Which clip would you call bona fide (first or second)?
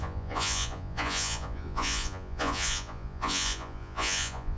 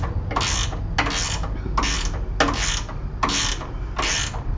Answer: second